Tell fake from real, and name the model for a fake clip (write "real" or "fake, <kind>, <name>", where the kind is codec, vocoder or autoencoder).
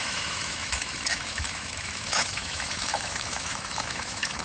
fake, autoencoder, DAC-VAE